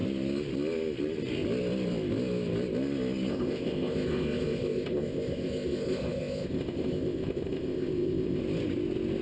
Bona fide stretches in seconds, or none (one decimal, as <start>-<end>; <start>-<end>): 0.0-3.3; 8.4-9.2